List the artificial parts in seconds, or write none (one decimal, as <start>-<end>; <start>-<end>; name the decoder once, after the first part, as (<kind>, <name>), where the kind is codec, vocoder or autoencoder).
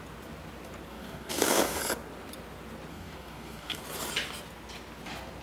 0.9-1.8 (codec, DAC); 2.9-3.8